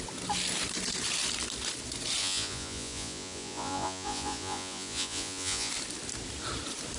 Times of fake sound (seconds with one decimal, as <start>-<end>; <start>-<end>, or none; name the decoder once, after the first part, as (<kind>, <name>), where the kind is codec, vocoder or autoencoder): 2.2-5.7 (vocoder, Vocos)

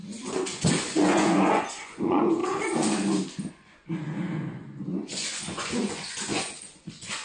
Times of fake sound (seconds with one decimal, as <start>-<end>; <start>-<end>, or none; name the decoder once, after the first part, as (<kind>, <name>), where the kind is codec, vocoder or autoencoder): 0.0-2.4 (vocoder, Vocos); 3.5-7.2

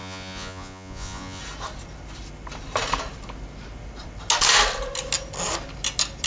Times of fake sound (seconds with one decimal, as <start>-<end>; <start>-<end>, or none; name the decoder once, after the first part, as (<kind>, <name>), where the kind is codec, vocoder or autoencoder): 0.0-1.4 (vocoder, Vocos)

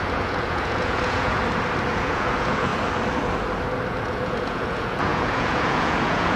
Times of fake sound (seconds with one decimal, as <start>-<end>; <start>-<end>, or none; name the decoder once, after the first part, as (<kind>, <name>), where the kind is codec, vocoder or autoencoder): 0.0-1.4 (vocoder, Vocos); 1.9-2.7; 3.9-6.4

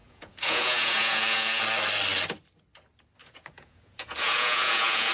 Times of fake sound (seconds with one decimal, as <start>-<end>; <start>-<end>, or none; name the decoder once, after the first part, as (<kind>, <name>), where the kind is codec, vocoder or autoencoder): 0.0-1.6 (vocoder, Vocos); 3.2-5.1

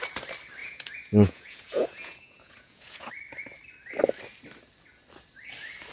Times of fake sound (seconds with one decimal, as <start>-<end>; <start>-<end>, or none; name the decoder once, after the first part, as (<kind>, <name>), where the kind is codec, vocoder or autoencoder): 0.6-3.1 (vocoder, Vocos)